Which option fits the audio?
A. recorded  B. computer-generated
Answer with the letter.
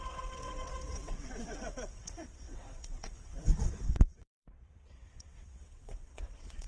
B